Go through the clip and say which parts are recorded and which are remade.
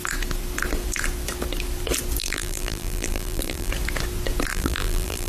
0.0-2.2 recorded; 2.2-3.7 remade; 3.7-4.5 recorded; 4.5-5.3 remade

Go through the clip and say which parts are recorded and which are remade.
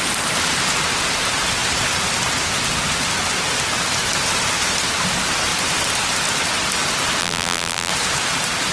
0.0-7.2 recorded; 7.2-7.9 remade; 7.9-8.7 recorded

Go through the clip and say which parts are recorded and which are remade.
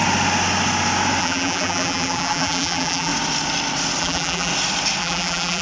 0.0-1.2 recorded; 1.2-3.1 remade; 3.1-4.0 recorded; 4.0-4.5 remade; 4.5-5.0 recorded; 5.0-5.6 remade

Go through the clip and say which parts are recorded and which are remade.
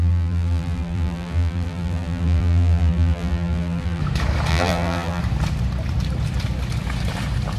0.0-4.0 remade; 4.0-4.5 recorded; 4.5-5.2 remade; 5.2-7.6 recorded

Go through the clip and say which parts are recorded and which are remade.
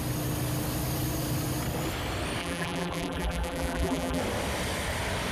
0.0-2.4 recorded; 2.4-4.2 remade; 4.2-5.3 recorded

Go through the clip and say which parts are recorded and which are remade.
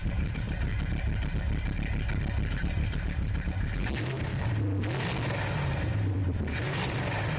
0.0-0.7 remade; 0.7-2.5 recorded; 2.5-4.3 remade; 4.3-5.6 recorded; 5.6-7.4 remade